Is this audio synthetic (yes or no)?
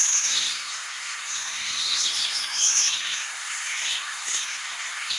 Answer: yes